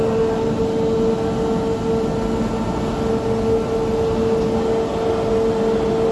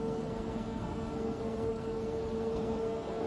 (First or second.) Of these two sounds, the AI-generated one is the second